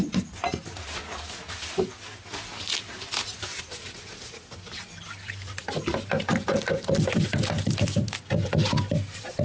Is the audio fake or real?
real